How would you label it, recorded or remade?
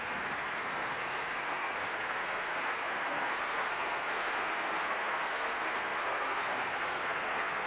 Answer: remade